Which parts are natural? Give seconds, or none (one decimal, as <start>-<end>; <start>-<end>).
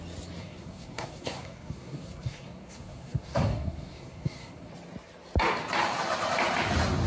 0.0-0.4; 4.7-7.1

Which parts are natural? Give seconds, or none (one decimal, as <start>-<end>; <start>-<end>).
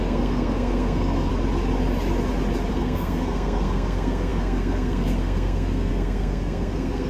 1.3-2.7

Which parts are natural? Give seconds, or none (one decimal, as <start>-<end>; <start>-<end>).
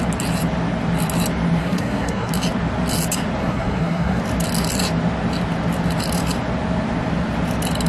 0.0-1.6; 2.3-3.4; 4.2-7.9